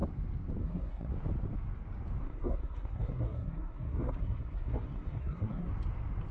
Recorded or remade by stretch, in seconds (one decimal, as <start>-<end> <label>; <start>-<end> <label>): 0.0-0.6 recorded; 0.6-1.1 remade; 1.1-2.2 recorded; 2.2-5.7 remade; 5.7-6.3 recorded